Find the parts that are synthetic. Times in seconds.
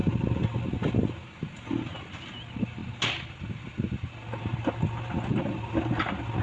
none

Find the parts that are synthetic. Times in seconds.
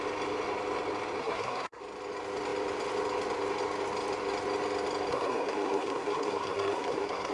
1.2-1.8 (codec, SNAC); 5.1-7.3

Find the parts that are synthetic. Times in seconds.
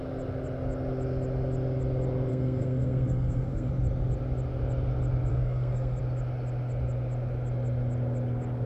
2.3-3.7 (codec, SNAC); 5.3-6.0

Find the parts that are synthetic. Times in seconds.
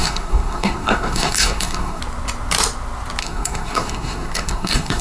0.0-2.0 (codec, SNAC); 3.2-5.0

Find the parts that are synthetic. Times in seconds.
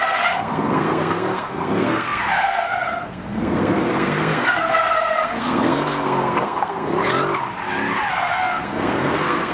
0.0-6.9 (codec, SNAC); 8.1-9.5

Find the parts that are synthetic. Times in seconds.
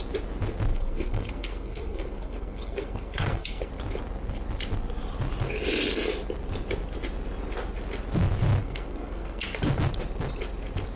0.7-3.7 (codec, SNAC); 8.6-9.5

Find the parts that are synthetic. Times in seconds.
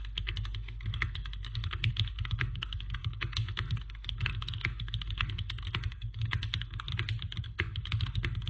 0.0-6.9 (codec, SNAC); 7.4-8.5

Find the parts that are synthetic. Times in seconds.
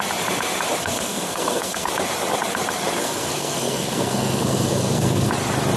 0.8-1.9 (codec, SNAC); 3.0-5.3